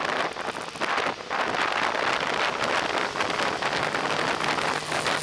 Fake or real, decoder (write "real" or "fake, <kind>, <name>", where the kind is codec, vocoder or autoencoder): real